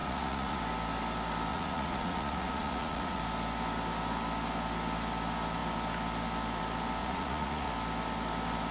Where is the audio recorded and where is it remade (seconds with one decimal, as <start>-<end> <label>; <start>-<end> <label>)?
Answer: 0.0-0.6 remade; 0.6-1.5 recorded; 1.5-3.2 remade; 3.2-7.0 recorded; 7.0-7.7 remade; 7.7-8.7 recorded